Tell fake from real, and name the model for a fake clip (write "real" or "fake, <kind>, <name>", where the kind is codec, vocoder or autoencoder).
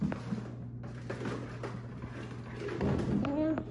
real